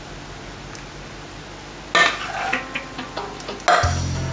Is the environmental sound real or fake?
real